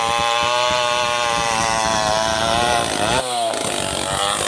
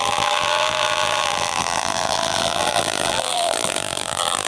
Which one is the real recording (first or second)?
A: first